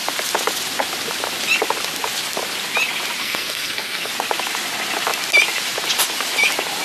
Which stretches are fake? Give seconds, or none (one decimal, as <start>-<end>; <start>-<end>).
3.2-4.1